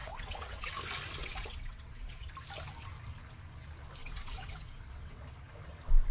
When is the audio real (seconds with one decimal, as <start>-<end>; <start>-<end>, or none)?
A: 0.7-1.2; 2.3-4.0; 5.2-6.1